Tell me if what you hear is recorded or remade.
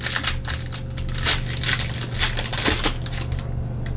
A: recorded